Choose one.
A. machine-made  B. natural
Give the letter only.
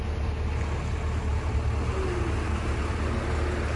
B